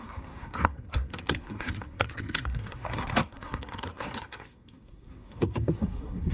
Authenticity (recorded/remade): remade